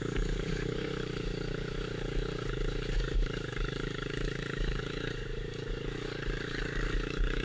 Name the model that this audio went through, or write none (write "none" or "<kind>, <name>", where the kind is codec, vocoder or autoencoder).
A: codec, DAC